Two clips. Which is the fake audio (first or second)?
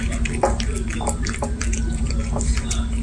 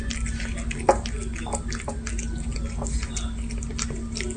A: first